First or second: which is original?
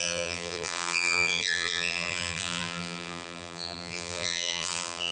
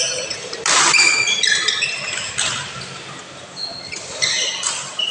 second